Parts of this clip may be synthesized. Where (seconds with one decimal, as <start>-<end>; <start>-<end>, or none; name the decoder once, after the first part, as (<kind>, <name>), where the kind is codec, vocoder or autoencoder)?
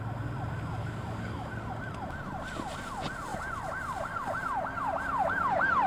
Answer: 0.8-1.7 (codec, DAC)